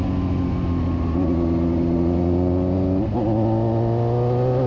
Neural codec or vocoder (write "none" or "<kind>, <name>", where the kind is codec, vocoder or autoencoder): none